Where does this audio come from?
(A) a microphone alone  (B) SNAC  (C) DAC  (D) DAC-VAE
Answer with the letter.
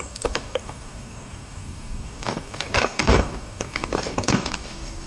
C